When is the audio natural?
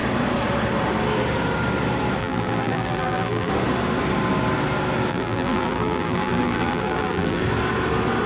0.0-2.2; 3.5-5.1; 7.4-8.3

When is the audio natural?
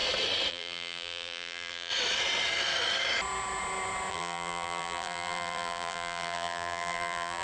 0.0-0.5; 1.9-4.1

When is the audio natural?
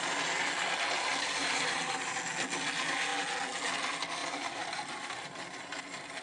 0.0-1.4; 2.2-4.2